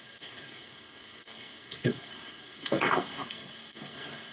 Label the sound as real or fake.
fake